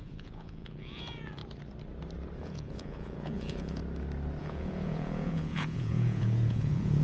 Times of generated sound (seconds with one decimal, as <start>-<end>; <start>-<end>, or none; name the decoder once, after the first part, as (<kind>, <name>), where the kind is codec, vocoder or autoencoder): 0.0-1.4 (vocoder, Vocos); 2.4-3.8; 4.4-7.0